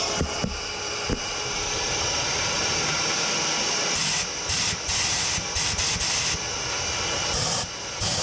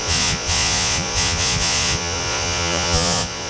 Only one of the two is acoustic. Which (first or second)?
first